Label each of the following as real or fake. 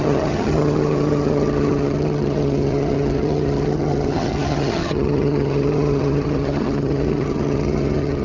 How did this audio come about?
fake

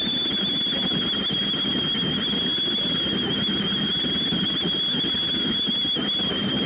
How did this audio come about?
real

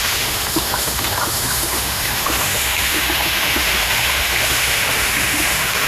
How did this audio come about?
fake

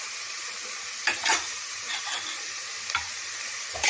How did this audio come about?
real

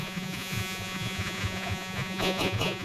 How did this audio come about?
fake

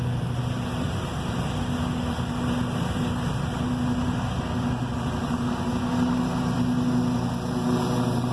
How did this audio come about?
real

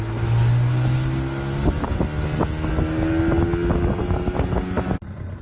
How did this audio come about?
real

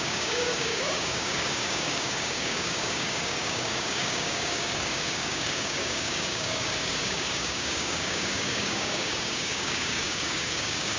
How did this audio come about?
fake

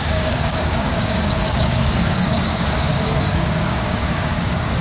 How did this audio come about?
fake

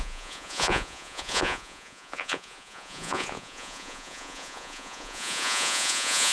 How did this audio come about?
fake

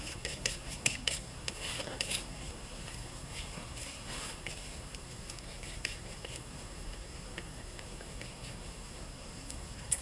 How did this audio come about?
fake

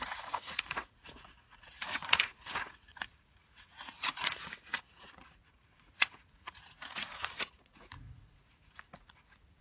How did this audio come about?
fake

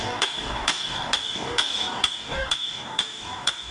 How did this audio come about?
fake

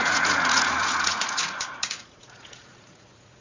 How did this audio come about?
fake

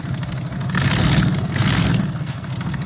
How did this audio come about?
fake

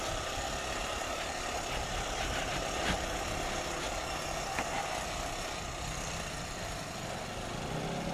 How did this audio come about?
real